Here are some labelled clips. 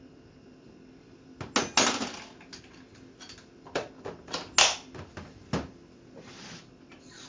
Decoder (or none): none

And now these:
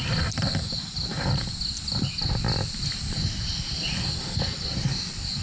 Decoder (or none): none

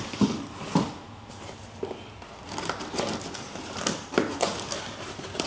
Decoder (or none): none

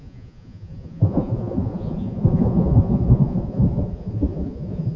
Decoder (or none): vocoder, Vocos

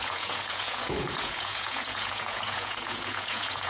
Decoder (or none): vocoder, Vocos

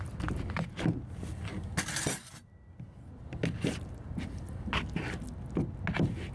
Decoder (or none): none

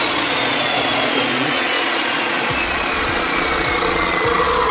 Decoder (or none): vocoder, Vocos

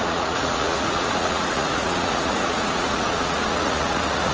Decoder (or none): vocoder, Vocos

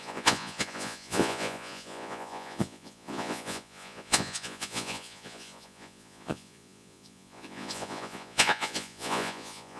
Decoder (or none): vocoder, Vocos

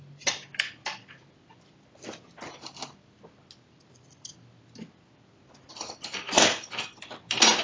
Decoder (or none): none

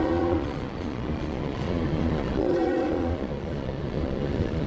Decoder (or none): vocoder, Vocos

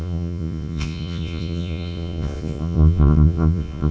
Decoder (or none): vocoder, Vocos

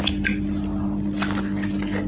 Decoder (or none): none